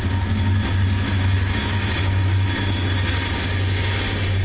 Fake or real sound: real